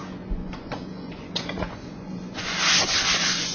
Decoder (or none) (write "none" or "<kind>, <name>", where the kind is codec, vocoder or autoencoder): vocoder, Vocos